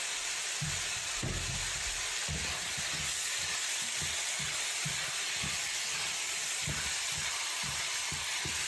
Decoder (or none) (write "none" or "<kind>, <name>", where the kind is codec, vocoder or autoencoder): vocoder, BigVGAN v2